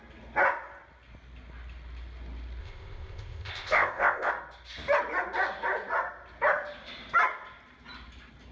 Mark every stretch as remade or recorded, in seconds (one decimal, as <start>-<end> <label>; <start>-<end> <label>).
0.0-2.6 recorded; 2.6-4.3 remade; 4.3-8.5 recorded